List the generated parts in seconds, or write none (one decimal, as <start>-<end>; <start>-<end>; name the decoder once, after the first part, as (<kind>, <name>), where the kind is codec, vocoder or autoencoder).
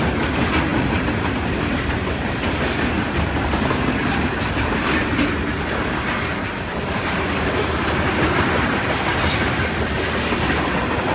6.7-7.2 (vocoder, BigVGAN v2)